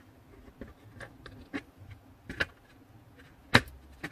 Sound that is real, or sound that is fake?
real